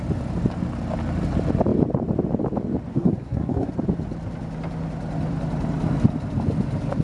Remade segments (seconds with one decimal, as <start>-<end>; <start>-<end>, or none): 2.9-3.7